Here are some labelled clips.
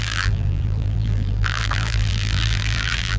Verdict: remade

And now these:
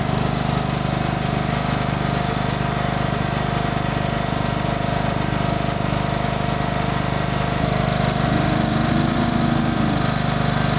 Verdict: recorded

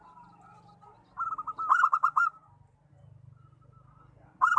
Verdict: recorded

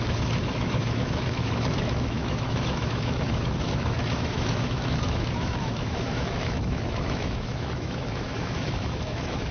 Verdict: remade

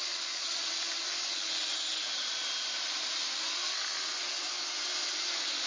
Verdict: recorded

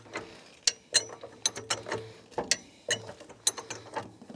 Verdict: recorded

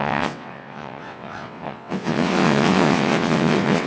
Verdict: remade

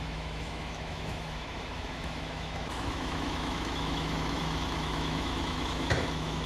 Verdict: remade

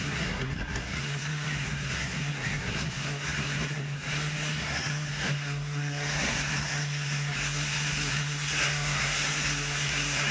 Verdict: remade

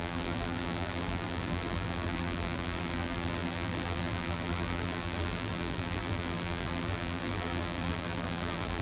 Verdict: remade